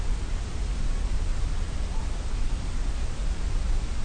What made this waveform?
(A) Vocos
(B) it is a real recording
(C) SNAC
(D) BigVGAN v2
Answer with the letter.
B